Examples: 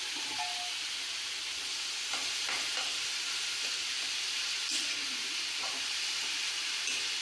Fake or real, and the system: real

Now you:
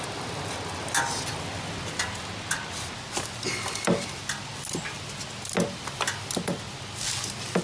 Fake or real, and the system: real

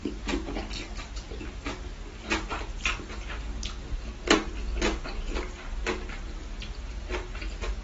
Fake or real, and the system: real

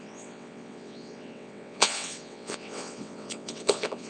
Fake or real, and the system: fake, vocoder, WaveNeXt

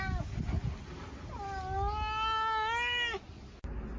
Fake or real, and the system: real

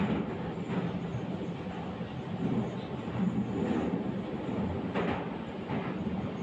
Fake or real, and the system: real